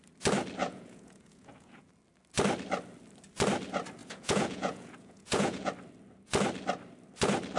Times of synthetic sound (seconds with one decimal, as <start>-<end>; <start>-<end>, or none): 0.6-1.9; 4.0-5.7